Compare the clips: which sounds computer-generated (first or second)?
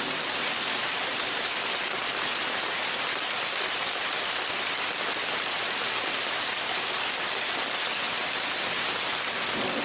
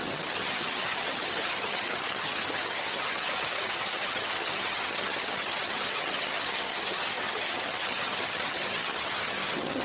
second